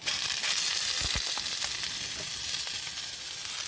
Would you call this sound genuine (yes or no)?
yes